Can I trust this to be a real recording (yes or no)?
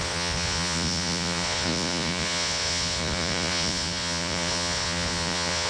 no